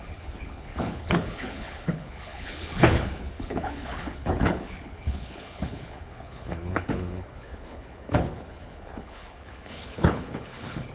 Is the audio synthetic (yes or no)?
yes